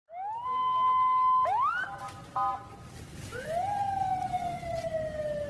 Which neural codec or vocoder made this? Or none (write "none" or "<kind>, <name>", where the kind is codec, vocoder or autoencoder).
none